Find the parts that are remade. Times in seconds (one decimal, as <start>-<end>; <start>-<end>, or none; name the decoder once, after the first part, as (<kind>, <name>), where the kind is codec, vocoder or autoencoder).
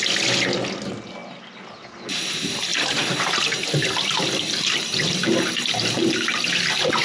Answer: none